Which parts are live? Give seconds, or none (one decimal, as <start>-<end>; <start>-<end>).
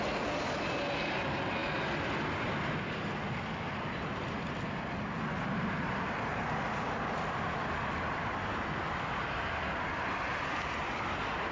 0.0-11.5